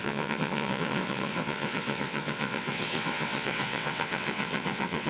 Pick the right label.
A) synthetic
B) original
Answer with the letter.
A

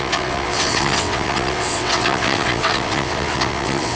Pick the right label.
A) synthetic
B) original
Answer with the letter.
A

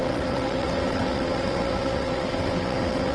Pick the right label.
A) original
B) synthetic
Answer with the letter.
B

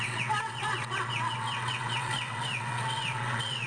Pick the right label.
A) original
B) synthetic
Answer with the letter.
B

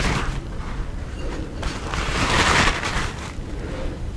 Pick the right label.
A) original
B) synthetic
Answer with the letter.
A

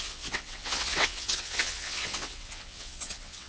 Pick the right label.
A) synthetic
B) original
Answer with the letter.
A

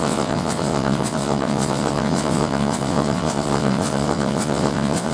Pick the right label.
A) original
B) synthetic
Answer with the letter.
B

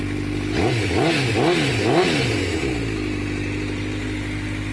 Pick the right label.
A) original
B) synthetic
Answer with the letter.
A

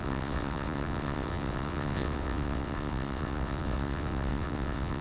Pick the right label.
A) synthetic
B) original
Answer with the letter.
A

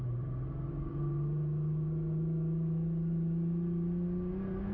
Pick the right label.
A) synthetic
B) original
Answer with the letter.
B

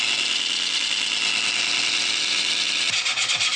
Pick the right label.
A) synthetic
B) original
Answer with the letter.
B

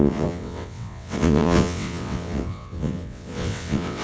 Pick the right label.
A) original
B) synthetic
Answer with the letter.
B